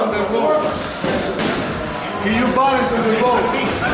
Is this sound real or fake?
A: real